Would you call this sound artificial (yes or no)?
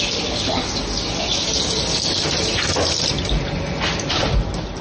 no